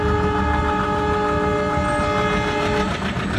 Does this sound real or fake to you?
real